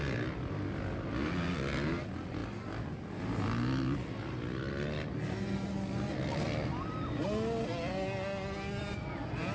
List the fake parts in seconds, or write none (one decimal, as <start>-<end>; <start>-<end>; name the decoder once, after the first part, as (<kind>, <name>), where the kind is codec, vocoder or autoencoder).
none